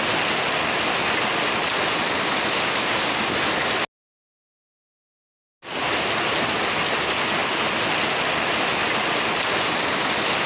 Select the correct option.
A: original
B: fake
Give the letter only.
A